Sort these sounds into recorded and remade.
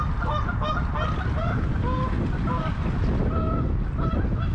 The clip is recorded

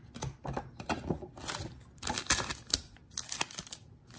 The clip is recorded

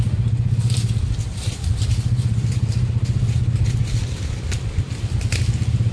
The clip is recorded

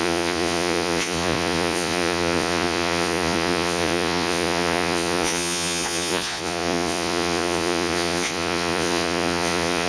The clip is remade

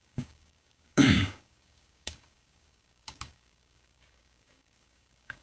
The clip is remade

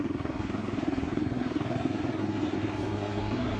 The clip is remade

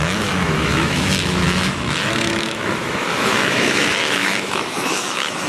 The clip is remade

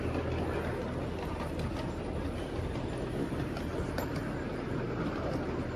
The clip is recorded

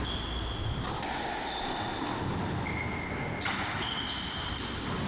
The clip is recorded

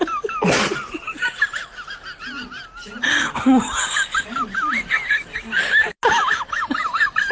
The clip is recorded